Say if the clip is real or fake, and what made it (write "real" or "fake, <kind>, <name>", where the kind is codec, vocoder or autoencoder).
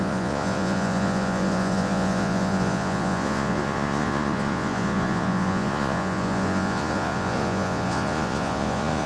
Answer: fake, vocoder, Vocos